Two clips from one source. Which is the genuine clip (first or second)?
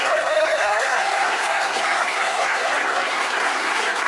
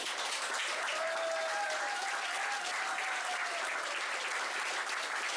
second